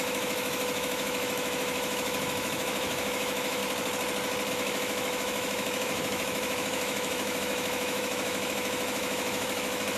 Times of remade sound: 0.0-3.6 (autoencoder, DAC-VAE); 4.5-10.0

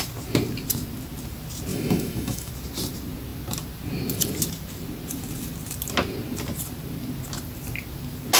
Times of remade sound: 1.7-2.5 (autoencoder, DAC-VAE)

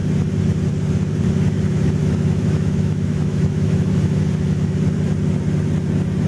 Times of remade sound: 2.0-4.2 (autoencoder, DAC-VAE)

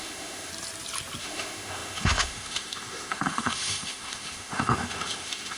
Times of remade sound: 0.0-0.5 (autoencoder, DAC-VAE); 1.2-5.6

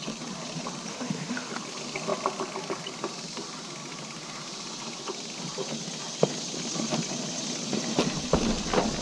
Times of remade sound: 0.9-1.5 (autoencoder, DAC-VAE)

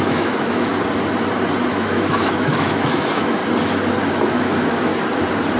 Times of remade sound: 0.0-0.7 (autoencoder, DAC-VAE); 1.7-3.4; 4.1-4.9